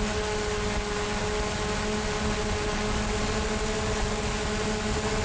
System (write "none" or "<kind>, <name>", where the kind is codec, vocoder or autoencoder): none